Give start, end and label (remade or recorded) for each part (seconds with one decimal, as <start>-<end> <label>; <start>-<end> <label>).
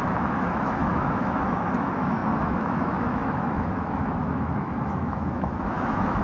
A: 0.0-6.2 remade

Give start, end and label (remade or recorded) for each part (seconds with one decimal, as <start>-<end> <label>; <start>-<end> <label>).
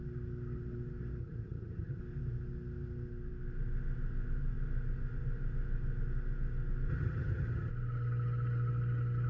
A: 0.0-1.2 recorded; 1.2-2.0 remade; 2.0-6.9 recorded; 6.9-7.7 remade; 7.7-9.3 recorded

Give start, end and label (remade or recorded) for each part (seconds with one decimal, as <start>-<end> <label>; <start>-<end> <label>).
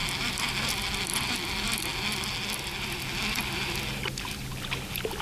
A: 0.0-5.2 recorded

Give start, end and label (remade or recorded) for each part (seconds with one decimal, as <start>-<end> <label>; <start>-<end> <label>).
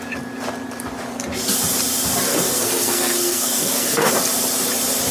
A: 0.0-2.3 recorded; 2.3-4.1 remade; 4.1-5.1 recorded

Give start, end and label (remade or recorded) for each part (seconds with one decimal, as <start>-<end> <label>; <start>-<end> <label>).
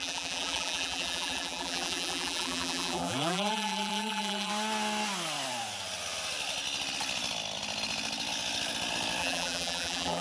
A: 0.0-4.5 remade; 4.5-9.2 recorded; 9.2-10.2 remade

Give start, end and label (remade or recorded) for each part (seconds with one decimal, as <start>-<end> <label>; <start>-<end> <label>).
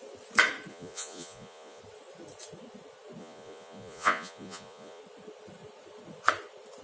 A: 0.0-0.7 recorded; 0.7-1.8 remade; 1.8-3.2 recorded; 3.2-5.0 remade; 5.0-6.8 recorded